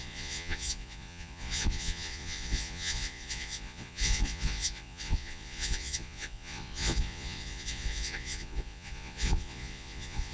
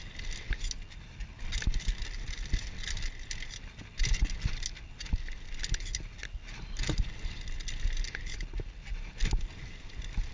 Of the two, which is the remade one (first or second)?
first